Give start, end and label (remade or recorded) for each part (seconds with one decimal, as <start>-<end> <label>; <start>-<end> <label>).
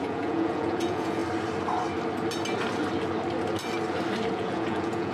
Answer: 0.0-1.2 remade; 1.2-4.3 recorded; 4.3-5.1 remade